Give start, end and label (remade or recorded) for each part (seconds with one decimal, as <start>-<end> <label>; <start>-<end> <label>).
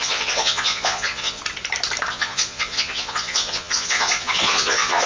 0.0-1.4 remade; 1.4-2.1 recorded; 2.1-5.1 remade